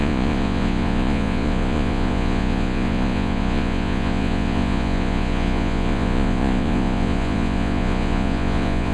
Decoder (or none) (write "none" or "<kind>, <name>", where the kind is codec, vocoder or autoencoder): vocoder, Vocos